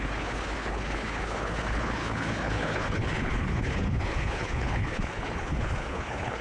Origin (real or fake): fake